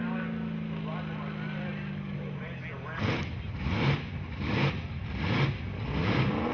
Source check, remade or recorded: recorded